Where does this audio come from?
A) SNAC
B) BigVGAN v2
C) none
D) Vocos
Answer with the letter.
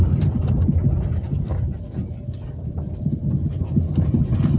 C